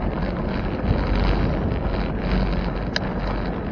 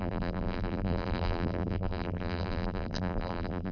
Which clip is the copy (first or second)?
second